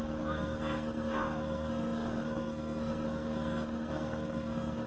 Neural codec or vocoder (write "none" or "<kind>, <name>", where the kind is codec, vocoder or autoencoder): codec, SNAC